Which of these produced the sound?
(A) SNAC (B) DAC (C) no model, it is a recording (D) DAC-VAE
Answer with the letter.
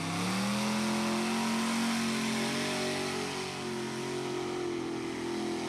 C